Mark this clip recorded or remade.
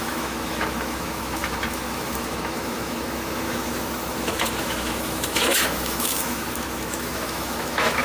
remade